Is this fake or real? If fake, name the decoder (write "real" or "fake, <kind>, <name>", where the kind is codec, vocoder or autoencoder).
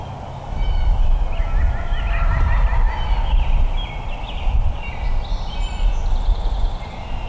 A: real